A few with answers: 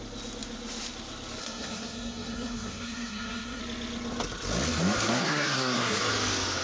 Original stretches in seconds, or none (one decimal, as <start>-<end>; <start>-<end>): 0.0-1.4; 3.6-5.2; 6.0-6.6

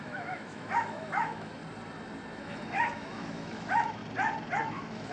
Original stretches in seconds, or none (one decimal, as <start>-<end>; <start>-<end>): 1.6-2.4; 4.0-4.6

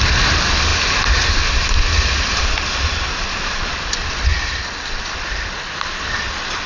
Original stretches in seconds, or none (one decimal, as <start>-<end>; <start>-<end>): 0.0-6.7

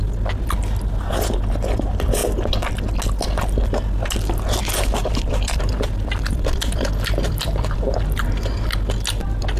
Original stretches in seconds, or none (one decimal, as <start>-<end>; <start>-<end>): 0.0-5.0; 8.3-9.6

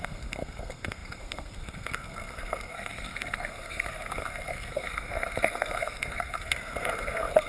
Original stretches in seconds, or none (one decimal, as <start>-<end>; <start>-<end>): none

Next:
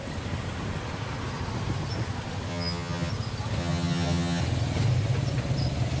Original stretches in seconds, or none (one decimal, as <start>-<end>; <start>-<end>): 0.0-2.5; 3.1-3.6; 4.4-6.0

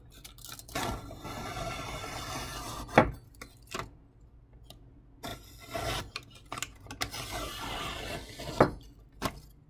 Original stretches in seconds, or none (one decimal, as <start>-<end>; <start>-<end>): 0.0-9.7

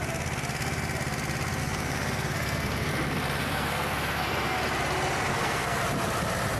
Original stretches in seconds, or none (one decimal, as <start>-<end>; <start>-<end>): 0.0-1.6; 2.9-3.4; 4.6-5.3; 5.8-6.6